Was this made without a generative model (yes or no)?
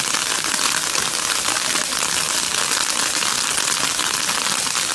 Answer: yes